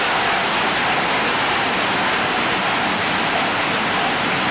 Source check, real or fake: real